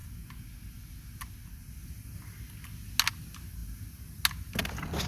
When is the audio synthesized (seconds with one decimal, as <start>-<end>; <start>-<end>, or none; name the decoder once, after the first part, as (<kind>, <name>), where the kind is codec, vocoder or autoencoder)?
none